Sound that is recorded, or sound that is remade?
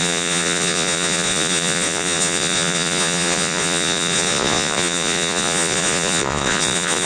remade